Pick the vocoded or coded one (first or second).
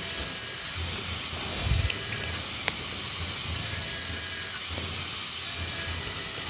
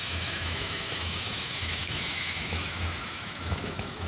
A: second